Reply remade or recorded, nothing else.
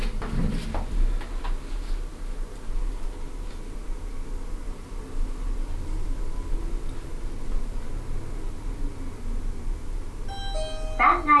recorded